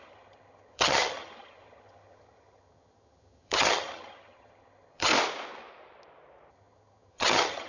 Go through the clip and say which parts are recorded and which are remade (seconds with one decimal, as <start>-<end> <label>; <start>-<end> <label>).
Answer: 0.0-5.1 remade; 5.1-6.5 recorded; 6.5-7.7 remade